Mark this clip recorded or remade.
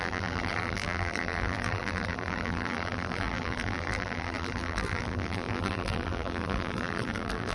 remade